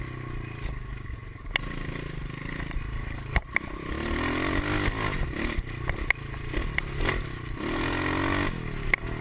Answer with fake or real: real